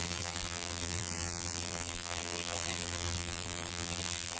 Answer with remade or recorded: remade